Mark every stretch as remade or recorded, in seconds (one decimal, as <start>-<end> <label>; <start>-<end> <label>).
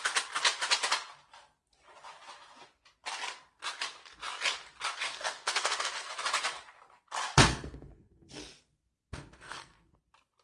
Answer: 0.0-5.1 recorded; 5.1-6.1 remade; 6.1-7.5 recorded; 7.5-8.3 remade; 8.3-9.0 recorded; 9.0-10.0 remade; 10.0-10.4 recorded